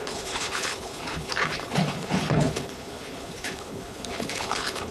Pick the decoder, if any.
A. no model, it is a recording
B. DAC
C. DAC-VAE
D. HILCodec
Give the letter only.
D